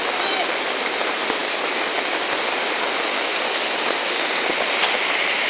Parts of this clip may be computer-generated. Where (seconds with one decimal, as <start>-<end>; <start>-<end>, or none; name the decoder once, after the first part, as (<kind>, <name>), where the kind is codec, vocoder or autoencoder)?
none